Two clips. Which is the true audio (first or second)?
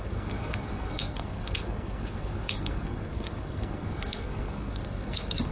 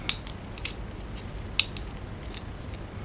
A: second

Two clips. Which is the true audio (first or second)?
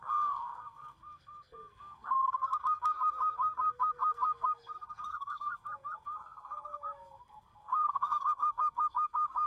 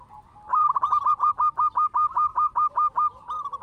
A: second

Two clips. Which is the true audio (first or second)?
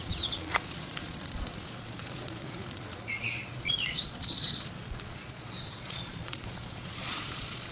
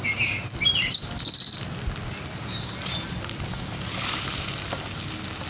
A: second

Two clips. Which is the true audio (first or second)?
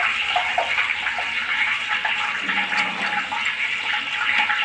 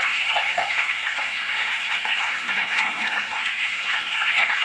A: first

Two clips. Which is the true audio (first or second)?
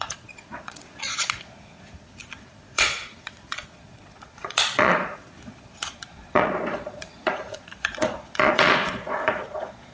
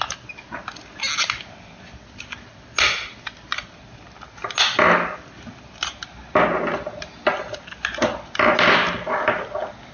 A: second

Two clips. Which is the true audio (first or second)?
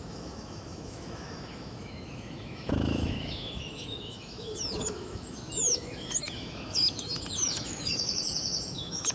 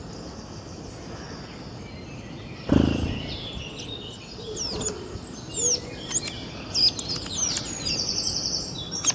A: second